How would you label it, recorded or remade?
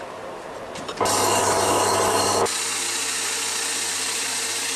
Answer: recorded